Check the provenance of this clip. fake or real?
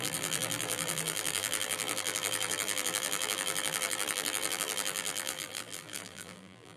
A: fake